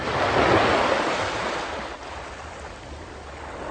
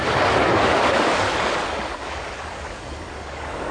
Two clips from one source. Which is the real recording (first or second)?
first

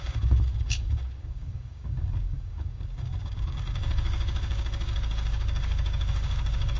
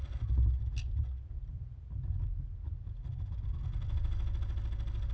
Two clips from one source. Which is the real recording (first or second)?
second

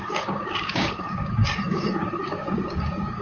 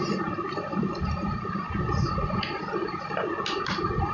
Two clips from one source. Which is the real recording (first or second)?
second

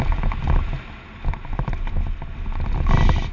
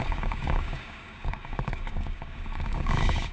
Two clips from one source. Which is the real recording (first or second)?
first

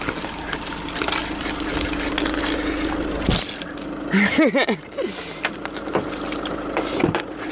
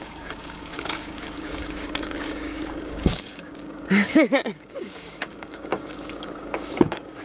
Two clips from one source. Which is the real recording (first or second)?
first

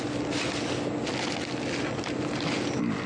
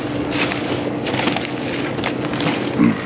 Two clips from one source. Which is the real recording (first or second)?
first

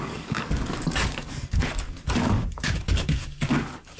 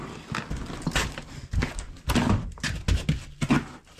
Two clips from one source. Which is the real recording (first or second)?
second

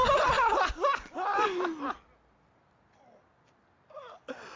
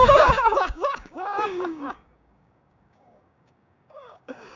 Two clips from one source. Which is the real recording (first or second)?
first